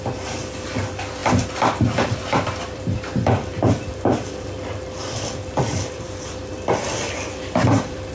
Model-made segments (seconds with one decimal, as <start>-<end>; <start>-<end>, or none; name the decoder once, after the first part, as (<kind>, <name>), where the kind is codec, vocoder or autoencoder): 0.0-8.1 (vocoder, BigVGAN v2)